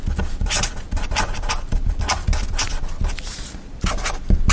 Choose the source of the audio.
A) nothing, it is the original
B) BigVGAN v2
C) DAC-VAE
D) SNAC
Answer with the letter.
A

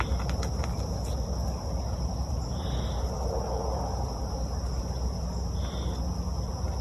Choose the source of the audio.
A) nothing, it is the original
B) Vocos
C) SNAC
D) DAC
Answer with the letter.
A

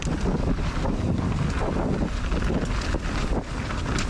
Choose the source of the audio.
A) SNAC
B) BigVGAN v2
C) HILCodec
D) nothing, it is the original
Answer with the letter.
D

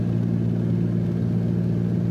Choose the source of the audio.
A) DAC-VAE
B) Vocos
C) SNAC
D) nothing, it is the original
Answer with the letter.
D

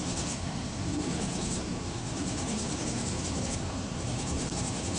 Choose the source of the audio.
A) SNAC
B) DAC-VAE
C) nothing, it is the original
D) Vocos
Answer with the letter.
A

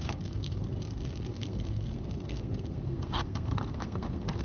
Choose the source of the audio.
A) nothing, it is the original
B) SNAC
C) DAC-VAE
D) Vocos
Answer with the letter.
B